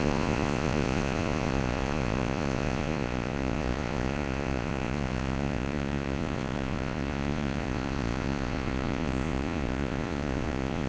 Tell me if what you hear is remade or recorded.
remade